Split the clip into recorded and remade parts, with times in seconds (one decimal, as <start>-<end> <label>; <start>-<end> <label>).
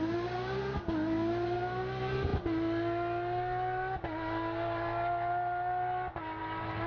0.0-6.9 recorded